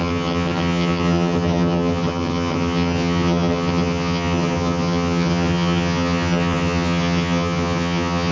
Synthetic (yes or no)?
yes